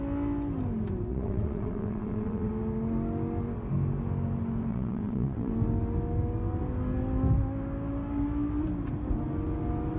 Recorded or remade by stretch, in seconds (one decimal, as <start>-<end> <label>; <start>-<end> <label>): 0.0-1.1 recorded; 1.1-2.5 remade; 2.5-4.7 recorded; 4.7-5.5 remade; 5.5-10.0 recorded

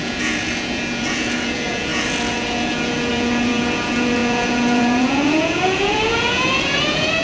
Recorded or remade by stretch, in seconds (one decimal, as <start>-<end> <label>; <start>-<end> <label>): 0.0-7.2 remade

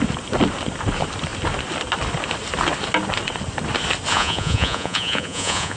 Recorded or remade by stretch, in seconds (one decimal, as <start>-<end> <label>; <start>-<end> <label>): 0.0-4.1 recorded; 4.1-5.8 remade

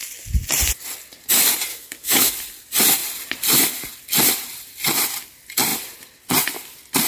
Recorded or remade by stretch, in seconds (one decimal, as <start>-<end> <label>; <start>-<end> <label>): 0.0-1.7 recorded; 1.7-2.3 remade; 2.3-7.1 recorded

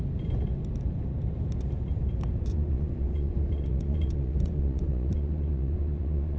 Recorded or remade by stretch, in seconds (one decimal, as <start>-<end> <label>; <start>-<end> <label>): 0.0-2.5 recorded; 2.5-6.4 remade

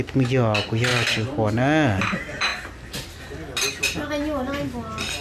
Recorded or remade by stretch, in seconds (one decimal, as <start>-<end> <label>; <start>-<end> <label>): 0.0-5.2 recorded